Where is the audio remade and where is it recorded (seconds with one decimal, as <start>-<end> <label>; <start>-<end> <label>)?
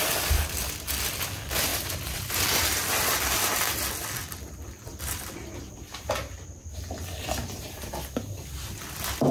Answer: 0.0-1.7 recorded; 1.7-2.3 remade; 2.3-4.0 recorded; 4.0-6.3 remade; 6.3-9.3 recorded